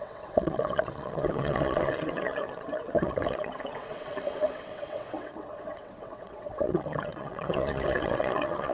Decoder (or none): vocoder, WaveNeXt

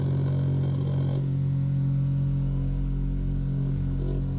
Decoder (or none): none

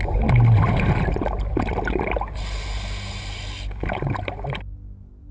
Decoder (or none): none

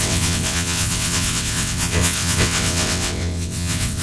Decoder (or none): vocoder, WaveNeXt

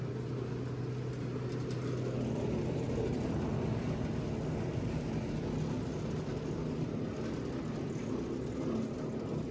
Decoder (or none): none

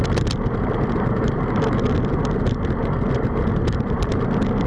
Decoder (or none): none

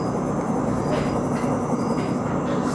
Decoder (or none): none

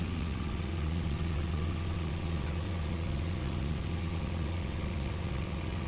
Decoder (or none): vocoder, WaveNeXt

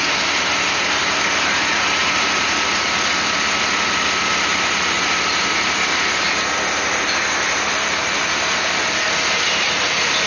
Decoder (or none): none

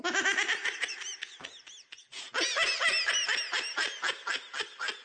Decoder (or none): none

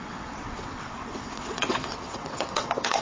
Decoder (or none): vocoder, WaveNeXt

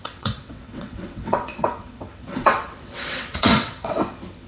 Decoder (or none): vocoder, WaveNeXt